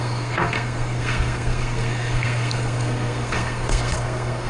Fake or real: fake